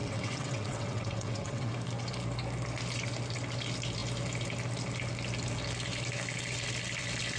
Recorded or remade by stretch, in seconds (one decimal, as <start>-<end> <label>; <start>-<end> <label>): 0.0-1.7 remade; 1.7-7.4 recorded